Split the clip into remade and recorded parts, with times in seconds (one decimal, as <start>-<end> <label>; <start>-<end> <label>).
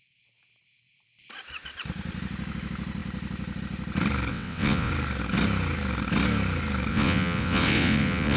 0.0-4.3 recorded; 4.3-4.9 remade; 4.9-6.9 recorded; 6.9-8.4 remade